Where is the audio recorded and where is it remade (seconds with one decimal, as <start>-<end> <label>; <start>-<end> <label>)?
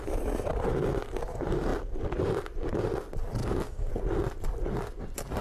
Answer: 0.0-3.4 recorded; 3.4-3.9 remade; 3.9-5.4 recorded